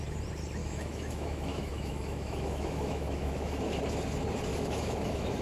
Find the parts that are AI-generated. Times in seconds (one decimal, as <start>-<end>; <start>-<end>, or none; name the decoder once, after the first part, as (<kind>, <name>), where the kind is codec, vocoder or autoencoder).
0.6-3.8 (autoencoder, DAC-VAE); 4.5-5.4